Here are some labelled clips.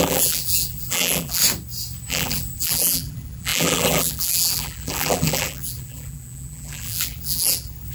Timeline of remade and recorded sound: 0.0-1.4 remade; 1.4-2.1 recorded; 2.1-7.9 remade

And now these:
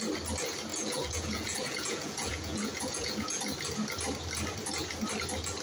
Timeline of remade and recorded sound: 0.0-0.7 recorded; 0.7-3.4 remade; 3.4-5.6 recorded

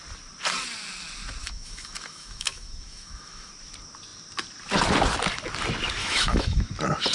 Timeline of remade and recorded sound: 0.0-1.4 recorded; 1.4-3.5 remade; 3.5-6.0 recorded; 6.0-6.6 remade; 6.6-7.1 recorded

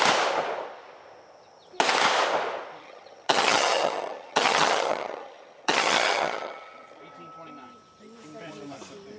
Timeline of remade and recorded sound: 0.0-2.8 recorded; 2.8-7.0 remade; 7.0-9.2 recorded